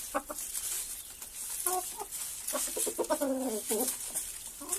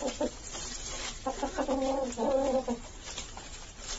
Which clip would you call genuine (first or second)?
first